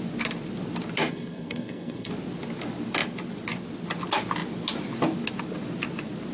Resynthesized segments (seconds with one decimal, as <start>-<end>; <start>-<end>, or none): 1.1-2.1